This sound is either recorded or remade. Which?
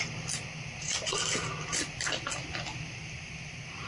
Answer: recorded